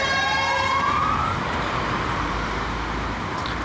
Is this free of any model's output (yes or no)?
yes